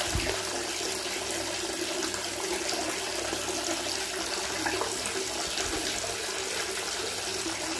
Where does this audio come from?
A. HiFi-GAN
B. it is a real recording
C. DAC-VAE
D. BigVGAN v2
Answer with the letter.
B